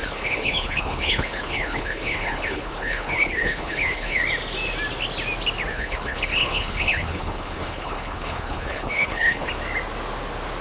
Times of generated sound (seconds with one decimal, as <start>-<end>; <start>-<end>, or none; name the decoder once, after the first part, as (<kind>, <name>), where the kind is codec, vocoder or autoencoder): 0.0-4.2 (codec, HILCodec); 5.7-9.5